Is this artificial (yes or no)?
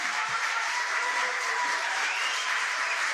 yes